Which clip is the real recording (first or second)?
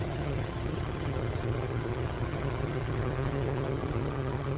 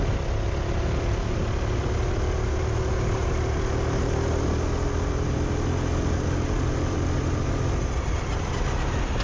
second